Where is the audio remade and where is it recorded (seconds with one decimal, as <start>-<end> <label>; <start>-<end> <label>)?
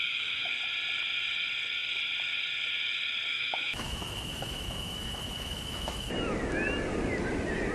0.0-0.5 remade; 0.5-3.3 recorded; 3.3-6.1 remade; 6.1-7.7 recorded